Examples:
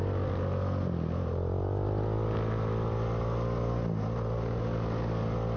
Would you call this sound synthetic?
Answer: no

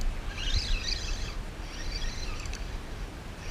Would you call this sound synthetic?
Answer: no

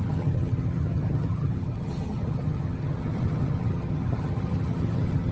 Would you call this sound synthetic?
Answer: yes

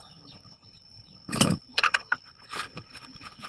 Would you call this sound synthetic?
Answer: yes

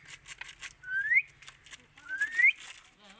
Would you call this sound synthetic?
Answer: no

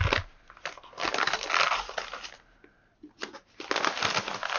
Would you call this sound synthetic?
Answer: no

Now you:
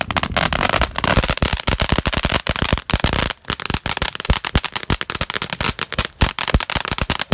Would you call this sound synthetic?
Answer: no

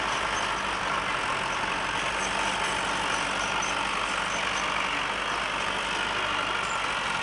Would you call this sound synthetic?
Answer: no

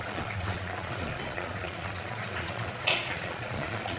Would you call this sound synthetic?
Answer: yes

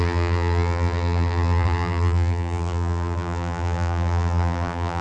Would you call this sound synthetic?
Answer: yes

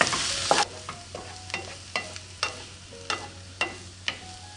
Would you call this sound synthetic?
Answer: no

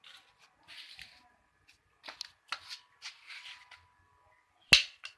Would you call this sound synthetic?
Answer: no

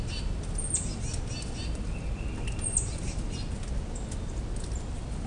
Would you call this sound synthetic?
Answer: no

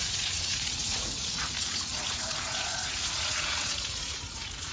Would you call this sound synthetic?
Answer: yes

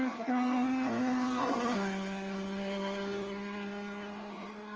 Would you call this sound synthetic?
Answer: yes